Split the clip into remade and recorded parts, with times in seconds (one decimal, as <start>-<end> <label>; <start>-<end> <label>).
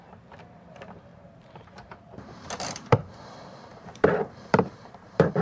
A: 0.0-1.1 recorded; 1.1-3.3 remade; 3.3-3.7 recorded; 3.7-5.4 remade